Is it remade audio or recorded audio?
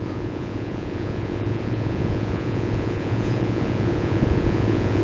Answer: remade